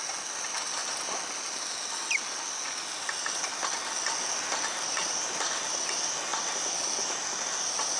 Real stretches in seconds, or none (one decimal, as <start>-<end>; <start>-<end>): 0.0-8.0